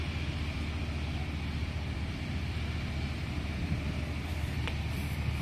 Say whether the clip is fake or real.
fake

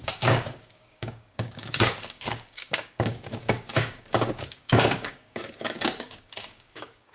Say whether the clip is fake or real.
fake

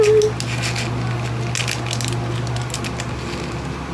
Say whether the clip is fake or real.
real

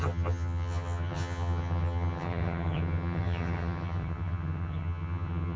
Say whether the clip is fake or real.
fake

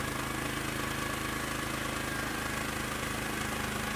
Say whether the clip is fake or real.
real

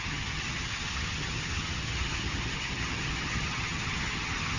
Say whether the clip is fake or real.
fake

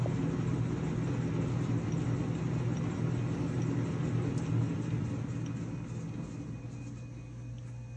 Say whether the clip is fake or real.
real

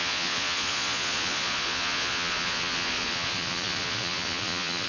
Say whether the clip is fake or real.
fake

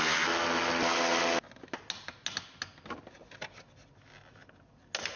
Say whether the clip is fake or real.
real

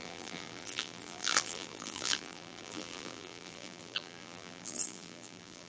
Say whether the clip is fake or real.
fake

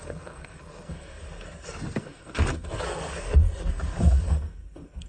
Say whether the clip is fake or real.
fake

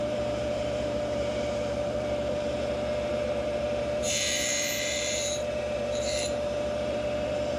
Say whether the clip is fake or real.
fake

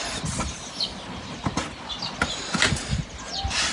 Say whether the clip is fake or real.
real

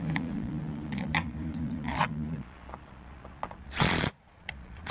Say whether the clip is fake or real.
fake